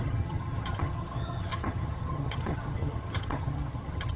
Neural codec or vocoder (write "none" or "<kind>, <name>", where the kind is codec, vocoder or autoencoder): vocoder, HiFi-GAN